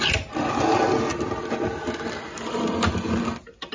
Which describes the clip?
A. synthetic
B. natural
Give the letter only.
B